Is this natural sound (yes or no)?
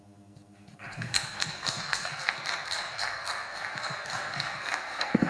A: no